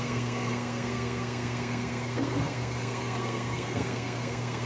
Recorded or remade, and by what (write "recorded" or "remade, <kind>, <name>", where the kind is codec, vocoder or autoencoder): remade, codec, SNAC